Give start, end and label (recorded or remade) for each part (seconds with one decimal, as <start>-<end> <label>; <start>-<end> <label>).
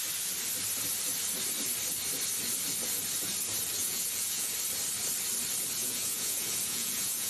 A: 0.0-3.8 recorded; 3.8-4.5 remade; 4.5-5.8 recorded; 5.8-7.3 remade